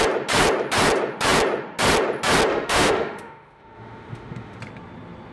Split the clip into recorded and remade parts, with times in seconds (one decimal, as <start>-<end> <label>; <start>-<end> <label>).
0.0-2.5 recorded; 2.5-4.6 remade; 4.6-5.3 recorded